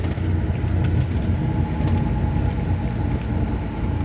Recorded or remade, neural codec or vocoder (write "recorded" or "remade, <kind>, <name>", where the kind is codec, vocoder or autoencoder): recorded